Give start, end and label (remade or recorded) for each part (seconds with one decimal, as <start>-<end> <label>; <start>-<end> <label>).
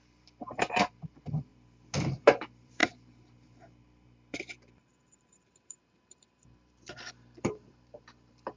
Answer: 0.0-1.5 remade; 1.5-2.4 recorded; 2.4-8.6 remade